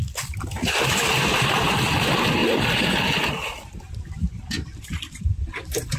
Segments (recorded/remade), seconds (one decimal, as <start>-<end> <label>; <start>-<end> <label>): 0.0-6.0 recorded